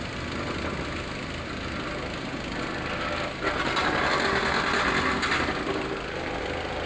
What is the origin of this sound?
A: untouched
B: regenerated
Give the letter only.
A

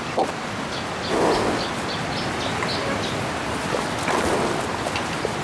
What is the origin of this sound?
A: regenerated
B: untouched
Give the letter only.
B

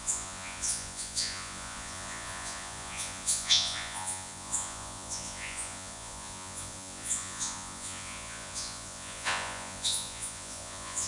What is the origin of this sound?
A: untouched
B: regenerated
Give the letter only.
B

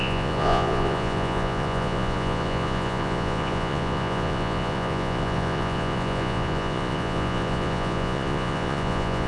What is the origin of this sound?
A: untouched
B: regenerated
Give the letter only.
B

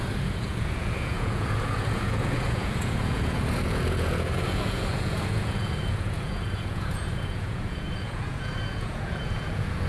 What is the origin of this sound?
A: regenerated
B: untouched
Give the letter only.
A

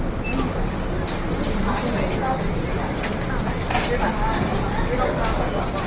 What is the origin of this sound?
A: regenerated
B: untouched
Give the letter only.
B